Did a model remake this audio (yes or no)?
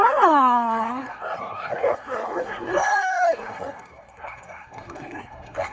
yes